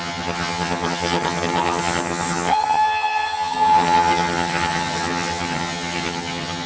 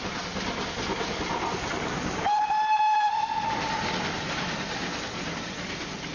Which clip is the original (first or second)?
second